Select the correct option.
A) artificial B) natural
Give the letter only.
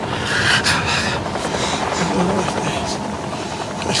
B